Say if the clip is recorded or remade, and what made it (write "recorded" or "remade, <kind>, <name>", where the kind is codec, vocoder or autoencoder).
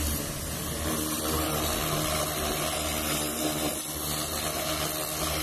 recorded